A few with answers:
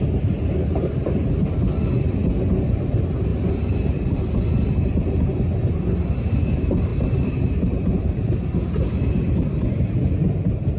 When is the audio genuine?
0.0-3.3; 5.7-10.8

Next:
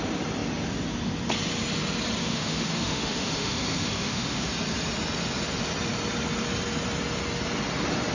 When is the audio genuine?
0.0-2.2; 4.5-8.1